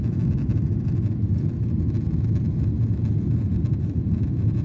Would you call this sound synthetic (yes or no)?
no